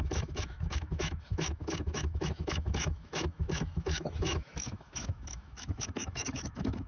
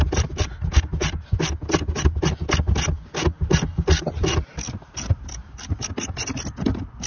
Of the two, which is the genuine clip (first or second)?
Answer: second